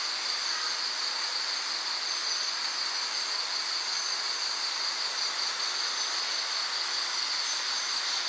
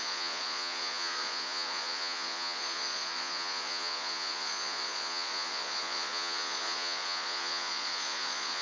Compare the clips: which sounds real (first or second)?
first